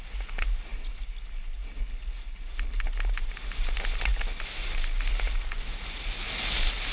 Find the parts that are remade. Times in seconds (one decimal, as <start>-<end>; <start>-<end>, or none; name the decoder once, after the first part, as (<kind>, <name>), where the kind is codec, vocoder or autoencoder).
none